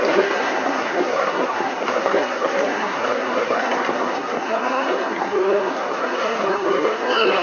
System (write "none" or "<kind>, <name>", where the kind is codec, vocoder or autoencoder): codec, SNAC